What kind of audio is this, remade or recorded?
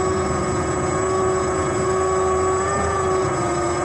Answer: remade